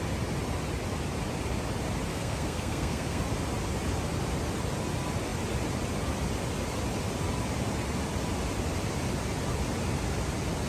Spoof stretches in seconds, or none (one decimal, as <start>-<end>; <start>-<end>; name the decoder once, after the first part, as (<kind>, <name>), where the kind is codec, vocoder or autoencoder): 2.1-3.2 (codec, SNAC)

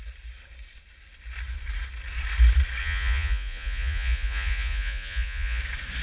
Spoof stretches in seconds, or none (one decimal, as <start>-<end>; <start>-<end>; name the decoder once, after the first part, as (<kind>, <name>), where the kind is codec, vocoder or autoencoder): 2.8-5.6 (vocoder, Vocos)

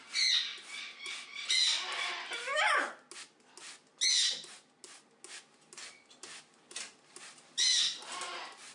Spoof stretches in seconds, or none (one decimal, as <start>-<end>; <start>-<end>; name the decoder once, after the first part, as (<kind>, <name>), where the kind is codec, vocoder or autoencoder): none

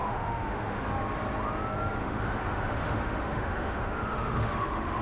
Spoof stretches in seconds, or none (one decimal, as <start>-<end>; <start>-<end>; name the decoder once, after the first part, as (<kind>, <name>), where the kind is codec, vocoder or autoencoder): 0.0-0.8 (autoencoder, DAC-VAE); 2.0-5.0

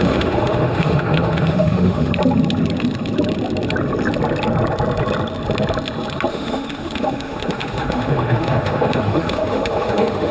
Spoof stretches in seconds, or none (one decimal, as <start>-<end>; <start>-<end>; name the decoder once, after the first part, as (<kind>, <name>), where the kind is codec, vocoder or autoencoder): 0.0-2.1 (autoencoder, DAC-VAE); 6.3-10.3

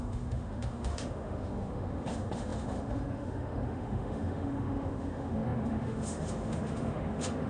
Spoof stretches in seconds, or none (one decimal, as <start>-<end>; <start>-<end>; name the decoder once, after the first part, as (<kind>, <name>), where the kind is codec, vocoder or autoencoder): 0.0-7.5 (autoencoder, DAC-VAE)

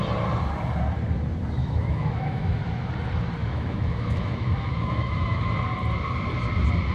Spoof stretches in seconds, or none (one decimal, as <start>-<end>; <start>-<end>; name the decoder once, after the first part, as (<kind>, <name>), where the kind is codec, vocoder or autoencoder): 1.6-2.6 (autoencoder, DAC-VAE); 3.4-5.5

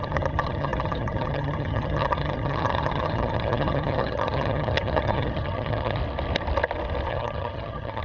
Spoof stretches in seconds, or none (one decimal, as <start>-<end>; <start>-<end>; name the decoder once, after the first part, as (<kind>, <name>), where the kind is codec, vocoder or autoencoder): 0.0-6.0 (vocoder, HiFi-GAN); 7.1-8.0